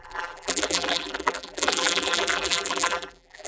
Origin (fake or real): fake